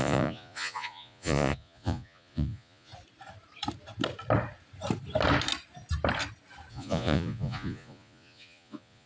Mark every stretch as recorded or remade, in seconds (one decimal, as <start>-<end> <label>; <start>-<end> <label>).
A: 0.0-2.9 remade; 2.9-6.7 recorded; 6.7-9.1 remade